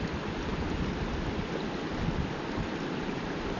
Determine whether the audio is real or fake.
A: real